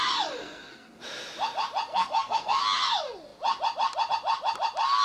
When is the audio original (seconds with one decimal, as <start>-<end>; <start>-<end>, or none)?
0.0-0.4; 1.0-1.9; 2.6-5.0